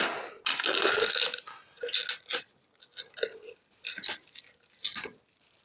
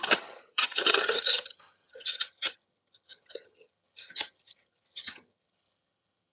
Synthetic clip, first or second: second